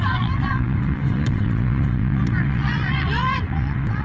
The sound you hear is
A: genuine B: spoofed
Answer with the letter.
B